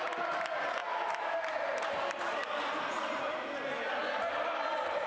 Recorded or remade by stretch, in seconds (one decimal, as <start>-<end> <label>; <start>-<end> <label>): 0.0-5.1 recorded